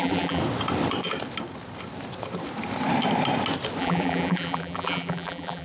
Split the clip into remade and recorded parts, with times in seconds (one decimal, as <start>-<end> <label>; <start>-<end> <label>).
0.0-0.4 remade; 0.4-3.8 recorded; 3.8-5.6 remade